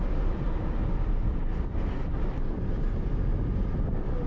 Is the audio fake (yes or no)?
no